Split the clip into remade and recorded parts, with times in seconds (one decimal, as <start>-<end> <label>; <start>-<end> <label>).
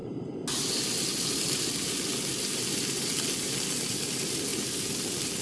0.0-5.4 recorded